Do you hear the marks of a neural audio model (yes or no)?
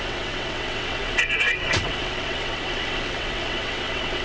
yes